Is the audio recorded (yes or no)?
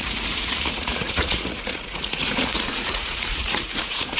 no